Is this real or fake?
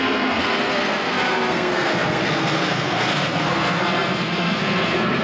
fake